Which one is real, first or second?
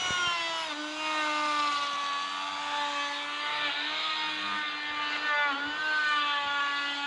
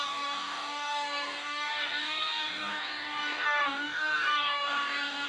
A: first